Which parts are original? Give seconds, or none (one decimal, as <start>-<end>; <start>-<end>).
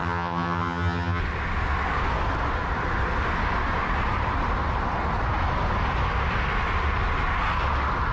1.2-8.1